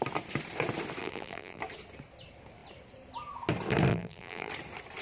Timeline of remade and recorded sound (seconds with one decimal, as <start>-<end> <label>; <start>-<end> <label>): 0.0-1.0 recorded; 1.0-1.6 remade; 1.6-3.9 recorded; 3.9-4.5 remade; 4.5-5.0 recorded